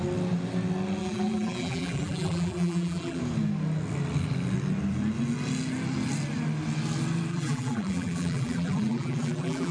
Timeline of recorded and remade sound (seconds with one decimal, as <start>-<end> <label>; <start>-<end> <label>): 0.0-1.0 recorded; 1.0-3.2 remade; 3.2-7.3 recorded; 7.3-9.7 remade